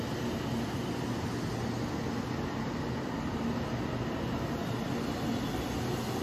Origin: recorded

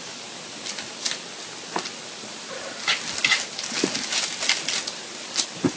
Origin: recorded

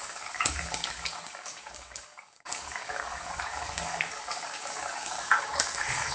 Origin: remade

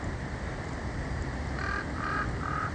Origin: remade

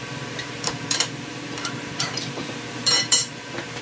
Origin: remade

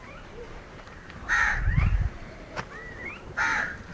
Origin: remade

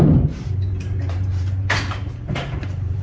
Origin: remade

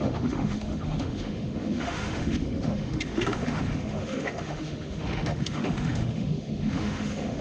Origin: remade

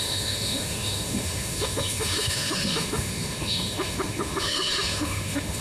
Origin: remade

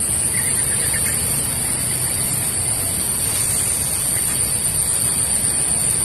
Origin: recorded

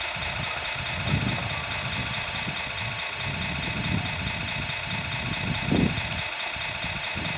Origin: recorded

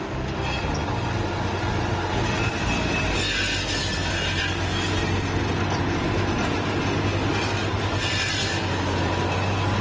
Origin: recorded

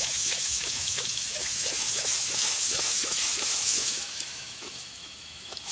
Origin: remade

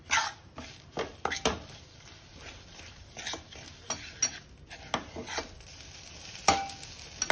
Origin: recorded